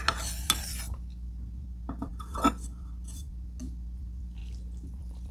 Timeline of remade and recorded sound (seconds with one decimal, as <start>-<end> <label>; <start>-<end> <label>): 0.0-2.1 recorded; 2.1-3.6 remade; 3.6-4.4 recorded; 4.4-5.3 remade